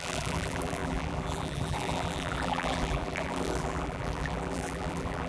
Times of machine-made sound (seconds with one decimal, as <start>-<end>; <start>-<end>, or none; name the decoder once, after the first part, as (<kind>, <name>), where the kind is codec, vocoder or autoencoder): 0.0-5.3 (vocoder, BigVGAN v2)